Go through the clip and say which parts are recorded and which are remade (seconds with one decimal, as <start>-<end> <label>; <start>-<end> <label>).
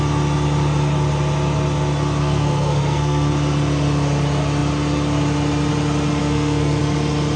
0.0-2.2 recorded; 2.2-3.3 remade; 3.3-6.2 recorded; 6.2-6.8 remade; 6.8-7.4 recorded